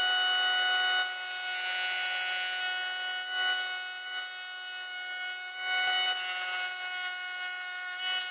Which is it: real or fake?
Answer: real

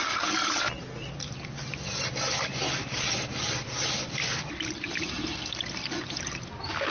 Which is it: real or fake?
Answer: real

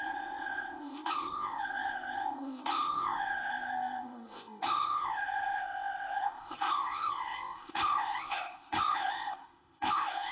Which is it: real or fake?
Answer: fake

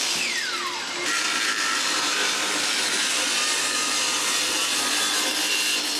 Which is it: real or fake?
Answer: fake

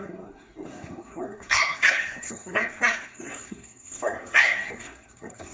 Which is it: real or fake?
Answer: fake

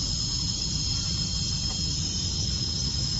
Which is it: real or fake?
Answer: real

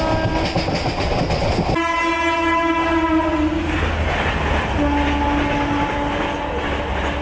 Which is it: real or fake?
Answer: real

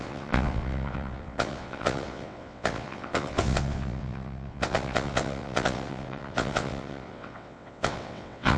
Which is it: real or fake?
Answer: fake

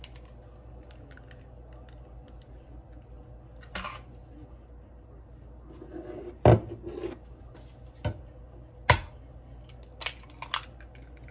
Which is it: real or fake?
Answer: real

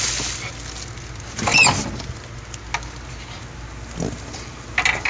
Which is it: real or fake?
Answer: real